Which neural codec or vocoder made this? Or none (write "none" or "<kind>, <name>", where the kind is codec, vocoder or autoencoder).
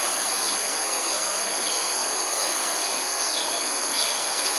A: codec, SNAC